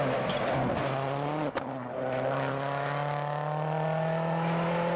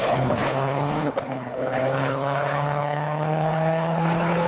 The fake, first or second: second